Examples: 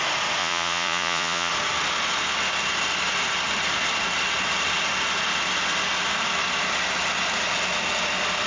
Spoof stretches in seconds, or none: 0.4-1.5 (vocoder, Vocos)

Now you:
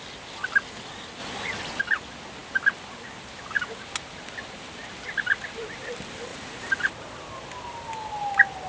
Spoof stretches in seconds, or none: 6.3-6.9 (vocoder, Vocos)

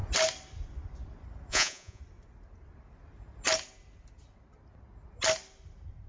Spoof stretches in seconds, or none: 1.5-2.0 (vocoder, Vocos)

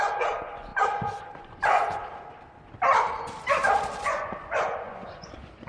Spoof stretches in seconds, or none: 0.0-0.7 (vocoder, Vocos); 1.2-2.0; 4.0-5.7

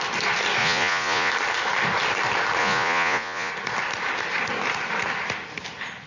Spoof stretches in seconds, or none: 0.6-1.3 (vocoder, Vocos); 2.6-3.5

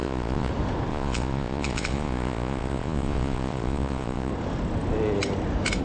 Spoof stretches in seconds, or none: 0.0-0.5 (vocoder, Vocos); 0.9-4.3